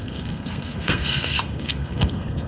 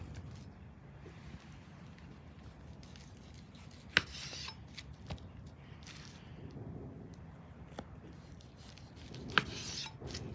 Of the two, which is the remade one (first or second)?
first